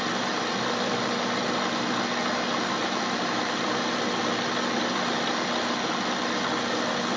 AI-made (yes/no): no